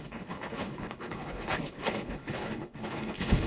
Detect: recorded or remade remade